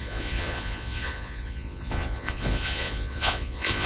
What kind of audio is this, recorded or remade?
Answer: remade